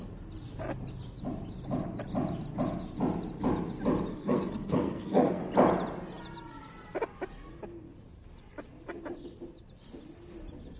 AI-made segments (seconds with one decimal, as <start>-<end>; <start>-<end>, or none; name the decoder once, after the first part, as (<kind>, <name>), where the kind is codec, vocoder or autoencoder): 4.1-5.4 (codec, SNAC)